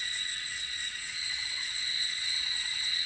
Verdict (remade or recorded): remade